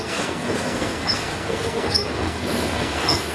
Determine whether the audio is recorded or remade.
remade